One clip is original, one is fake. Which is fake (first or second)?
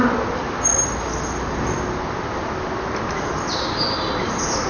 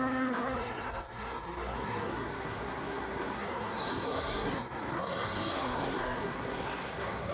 second